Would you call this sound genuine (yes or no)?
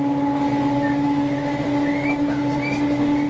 yes